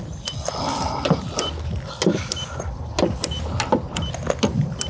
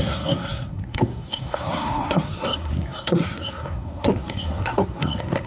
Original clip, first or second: first